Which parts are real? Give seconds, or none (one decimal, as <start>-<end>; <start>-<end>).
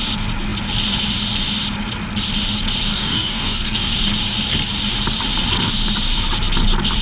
0.0-2.9; 3.9-7.0